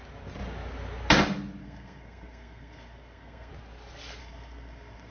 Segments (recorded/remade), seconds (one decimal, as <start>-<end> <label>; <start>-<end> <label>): 0.0-1.6 recorded; 1.6-3.5 remade; 3.5-4.2 recorded; 4.2-5.1 remade